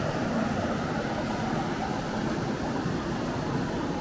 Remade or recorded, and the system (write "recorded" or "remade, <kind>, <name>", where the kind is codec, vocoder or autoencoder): recorded